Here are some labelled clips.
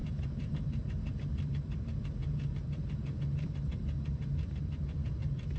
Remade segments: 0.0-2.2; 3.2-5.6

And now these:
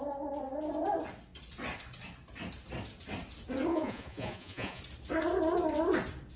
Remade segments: 3.7-4.8